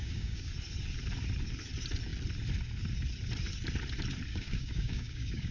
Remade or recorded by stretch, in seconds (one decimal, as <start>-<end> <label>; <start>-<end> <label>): 0.0-0.5 remade; 0.5-4.3 recorded; 4.3-5.5 remade